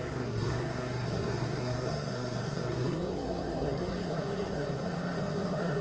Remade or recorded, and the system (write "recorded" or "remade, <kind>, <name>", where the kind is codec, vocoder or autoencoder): remade, codec, SNAC